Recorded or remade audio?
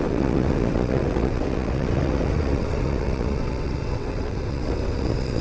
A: remade